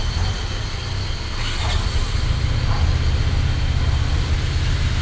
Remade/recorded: recorded